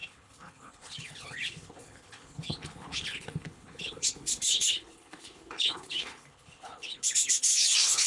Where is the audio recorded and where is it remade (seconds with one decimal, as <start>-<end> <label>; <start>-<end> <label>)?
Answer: 0.0-8.1 remade